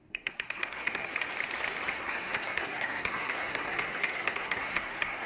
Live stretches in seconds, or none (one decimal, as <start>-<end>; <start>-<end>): 1.1-1.9